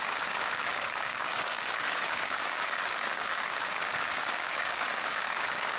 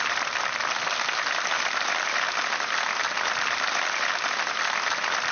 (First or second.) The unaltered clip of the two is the second